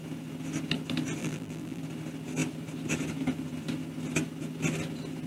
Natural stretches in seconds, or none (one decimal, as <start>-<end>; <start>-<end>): 0.0-1.2; 1.8-5.3